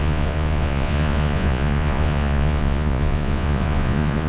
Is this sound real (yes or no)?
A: no